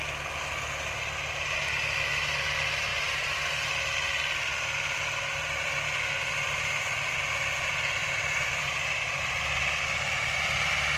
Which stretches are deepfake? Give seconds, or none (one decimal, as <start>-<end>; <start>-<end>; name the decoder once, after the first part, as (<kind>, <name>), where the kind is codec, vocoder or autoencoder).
2.9-3.7 (vocoder, BigVGAN v2); 8.0-9.4